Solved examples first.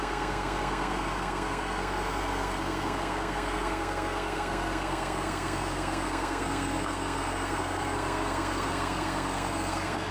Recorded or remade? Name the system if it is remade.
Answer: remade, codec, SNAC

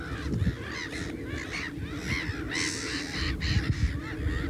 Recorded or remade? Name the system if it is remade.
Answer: recorded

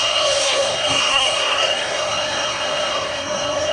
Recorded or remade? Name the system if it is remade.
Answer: remade, codec, SNAC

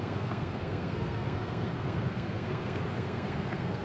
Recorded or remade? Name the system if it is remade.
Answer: remade, codec, SNAC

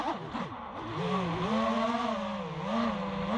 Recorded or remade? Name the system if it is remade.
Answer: recorded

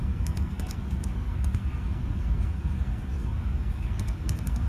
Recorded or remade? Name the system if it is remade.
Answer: remade, codec, SNAC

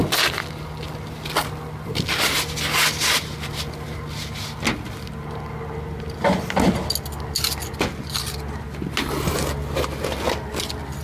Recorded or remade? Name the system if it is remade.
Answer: recorded